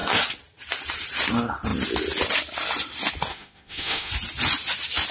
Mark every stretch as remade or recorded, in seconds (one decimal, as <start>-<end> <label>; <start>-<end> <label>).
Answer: 0.0-3.3 recorded; 3.3-4.1 remade; 4.1-5.1 recorded